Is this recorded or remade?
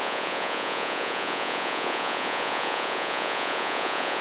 remade